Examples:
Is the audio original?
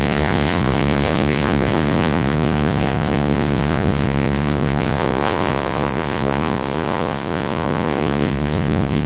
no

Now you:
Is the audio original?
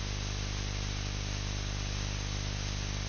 yes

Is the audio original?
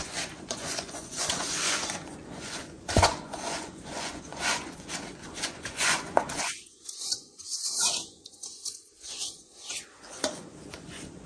no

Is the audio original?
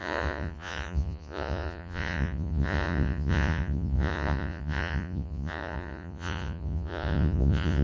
no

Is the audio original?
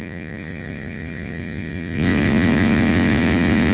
no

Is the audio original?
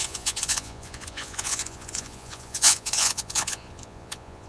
no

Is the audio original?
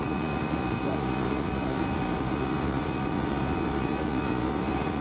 no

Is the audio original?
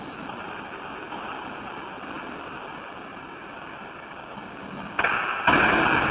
yes